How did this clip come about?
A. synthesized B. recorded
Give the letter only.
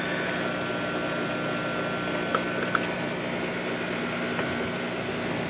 B